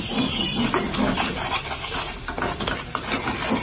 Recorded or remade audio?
recorded